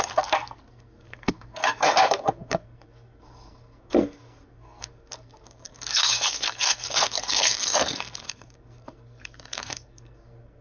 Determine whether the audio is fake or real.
fake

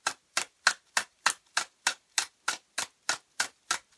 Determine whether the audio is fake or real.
real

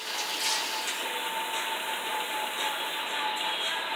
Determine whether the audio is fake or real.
real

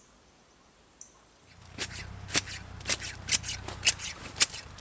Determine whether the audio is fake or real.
real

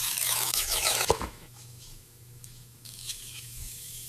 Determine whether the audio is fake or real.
fake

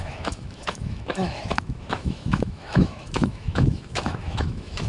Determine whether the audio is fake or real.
fake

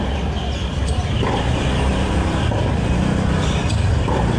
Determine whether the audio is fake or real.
real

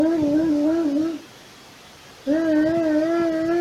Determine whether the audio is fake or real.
real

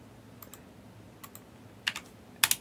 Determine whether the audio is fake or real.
real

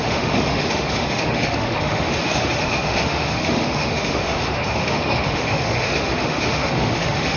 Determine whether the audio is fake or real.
fake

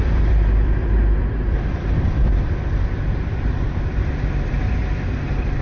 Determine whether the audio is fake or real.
fake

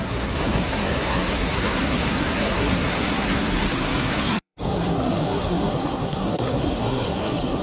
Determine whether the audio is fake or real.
fake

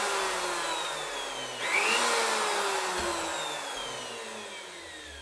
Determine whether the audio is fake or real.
real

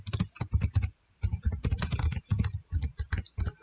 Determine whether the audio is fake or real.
real